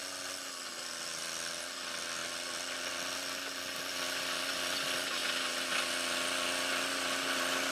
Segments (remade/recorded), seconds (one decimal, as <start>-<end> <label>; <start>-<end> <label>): 0.0-7.7 recorded